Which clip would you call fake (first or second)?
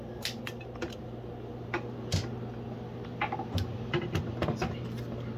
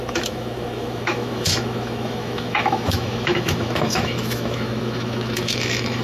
second